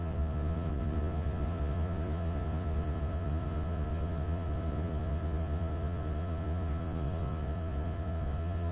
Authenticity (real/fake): fake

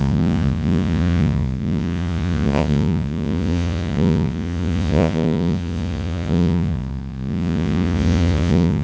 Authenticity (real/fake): fake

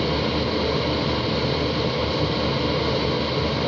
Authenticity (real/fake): real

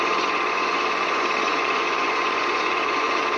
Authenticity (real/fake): fake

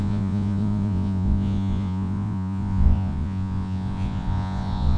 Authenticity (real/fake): fake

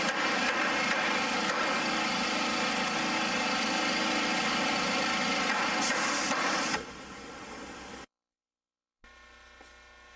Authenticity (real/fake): real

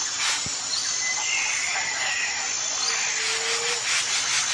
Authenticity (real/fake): real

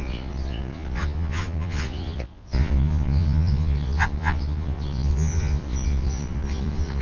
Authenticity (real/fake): fake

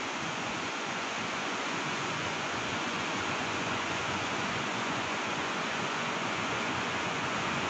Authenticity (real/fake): fake